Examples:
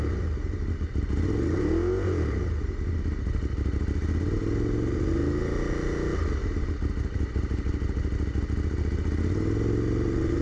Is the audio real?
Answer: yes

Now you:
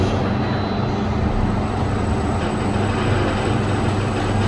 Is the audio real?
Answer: yes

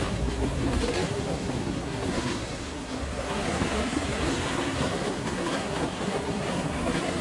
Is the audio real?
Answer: no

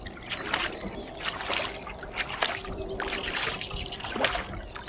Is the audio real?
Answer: yes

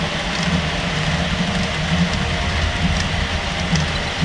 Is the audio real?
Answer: yes